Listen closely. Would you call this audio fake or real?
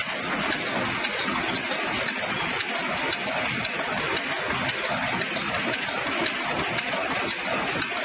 real